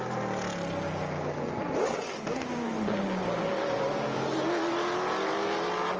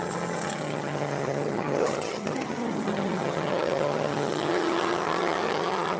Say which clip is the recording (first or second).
first